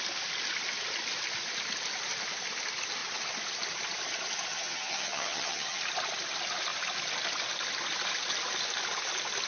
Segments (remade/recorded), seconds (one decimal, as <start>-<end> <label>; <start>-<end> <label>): 0.0-4.5 recorded; 4.5-5.8 remade; 5.8-9.5 recorded